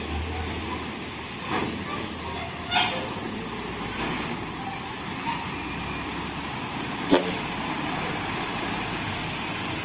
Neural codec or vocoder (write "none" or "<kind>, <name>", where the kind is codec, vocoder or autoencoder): none